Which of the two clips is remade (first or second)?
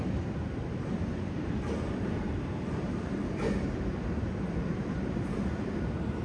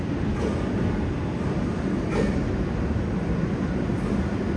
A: first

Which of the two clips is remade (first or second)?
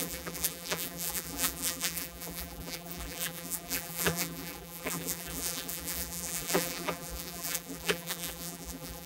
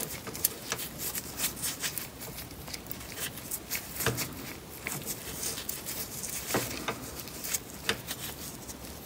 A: first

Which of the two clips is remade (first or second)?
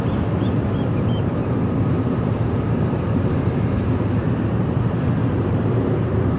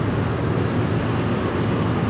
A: first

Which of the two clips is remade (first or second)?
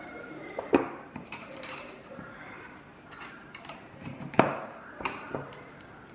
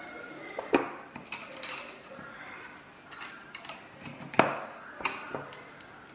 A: first